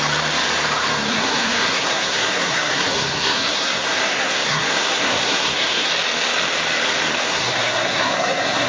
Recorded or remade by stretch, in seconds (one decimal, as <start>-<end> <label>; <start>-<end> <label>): 0.0-1.1 recorded; 1.1-5.9 remade; 5.9-7.2 recorded; 7.2-8.7 remade